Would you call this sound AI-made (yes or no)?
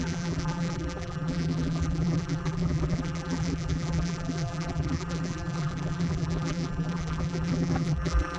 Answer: yes